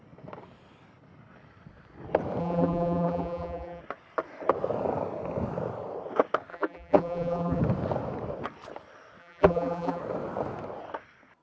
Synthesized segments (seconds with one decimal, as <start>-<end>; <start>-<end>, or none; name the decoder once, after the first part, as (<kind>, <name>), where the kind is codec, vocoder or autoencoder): 2.4-3.8 (vocoder, BigVGAN v2); 6.5-7.6; 9.2-10.0